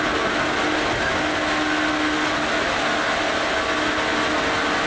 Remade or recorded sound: recorded